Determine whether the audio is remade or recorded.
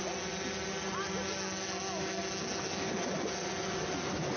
recorded